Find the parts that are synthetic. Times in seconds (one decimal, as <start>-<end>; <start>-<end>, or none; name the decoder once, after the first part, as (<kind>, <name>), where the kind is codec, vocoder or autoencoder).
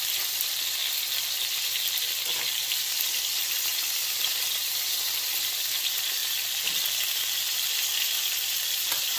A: 0.0-0.8 (vocoder, BigVGAN v2); 1.6-6.2; 8.6-9.2